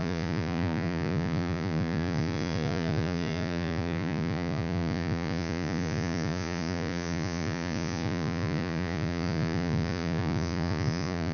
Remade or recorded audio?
remade